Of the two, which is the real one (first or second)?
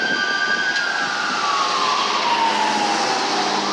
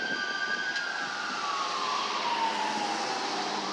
first